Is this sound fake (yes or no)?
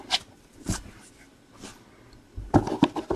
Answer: no